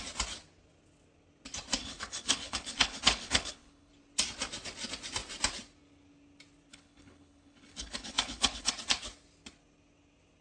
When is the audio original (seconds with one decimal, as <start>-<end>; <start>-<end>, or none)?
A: 0.0-1.8; 3.9-6.7; 8.7-10.4